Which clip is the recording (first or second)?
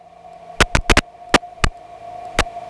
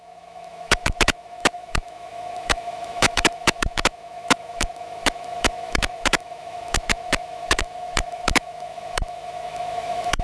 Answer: first